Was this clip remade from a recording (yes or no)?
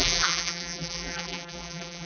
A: yes